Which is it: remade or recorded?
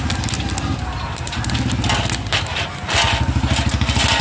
recorded